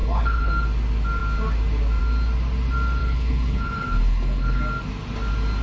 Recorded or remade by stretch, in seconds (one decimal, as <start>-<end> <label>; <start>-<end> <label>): 0.0-0.5 remade; 0.5-3.0 recorded; 3.0-4.6 remade; 4.6-5.6 recorded